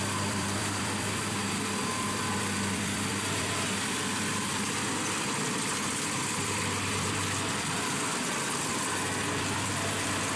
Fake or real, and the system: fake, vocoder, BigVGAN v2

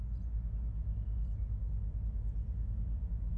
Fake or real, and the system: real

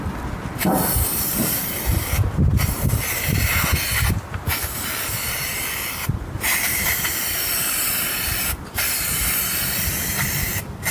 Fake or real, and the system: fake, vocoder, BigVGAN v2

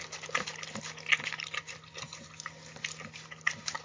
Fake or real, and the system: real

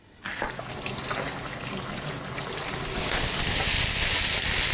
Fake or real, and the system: real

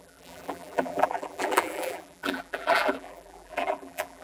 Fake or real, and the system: fake, vocoder, BigVGAN v2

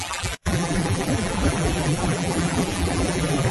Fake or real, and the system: fake, vocoder, BigVGAN v2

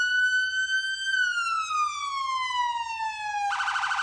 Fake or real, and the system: real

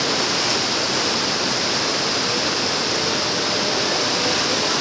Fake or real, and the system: fake, vocoder, BigVGAN v2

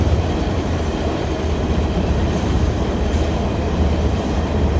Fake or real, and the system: fake, vocoder, BigVGAN v2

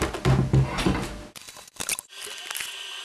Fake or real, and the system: real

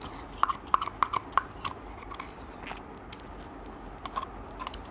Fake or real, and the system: real